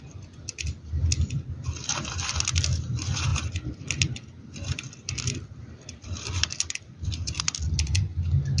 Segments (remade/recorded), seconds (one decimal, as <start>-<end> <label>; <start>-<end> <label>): 0.0-3.3 recorded; 3.3-7.4 remade; 7.4-8.6 recorded